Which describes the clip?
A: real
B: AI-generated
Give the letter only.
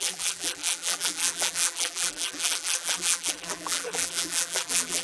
B